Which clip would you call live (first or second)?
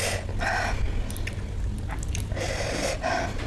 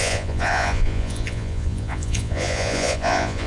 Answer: first